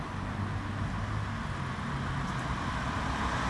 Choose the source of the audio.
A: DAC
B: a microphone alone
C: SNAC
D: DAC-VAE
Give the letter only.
B